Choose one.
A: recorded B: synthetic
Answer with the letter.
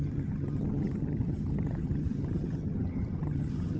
B